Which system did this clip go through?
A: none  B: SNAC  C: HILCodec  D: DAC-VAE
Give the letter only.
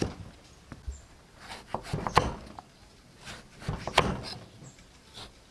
A